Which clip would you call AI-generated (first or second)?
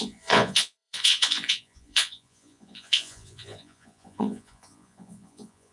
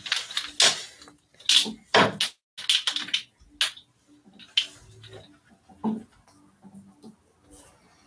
first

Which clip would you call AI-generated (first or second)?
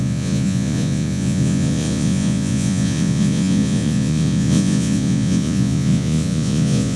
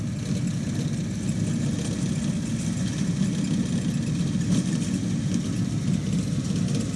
first